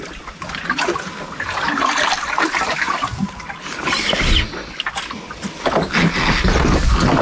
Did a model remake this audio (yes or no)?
no